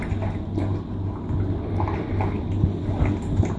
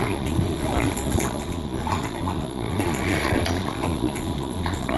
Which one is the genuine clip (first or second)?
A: first